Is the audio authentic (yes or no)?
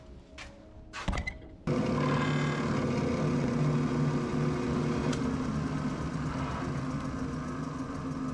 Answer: yes